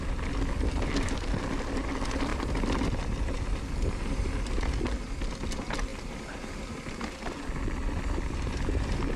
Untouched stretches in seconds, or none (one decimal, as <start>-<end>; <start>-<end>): 0.0-9.2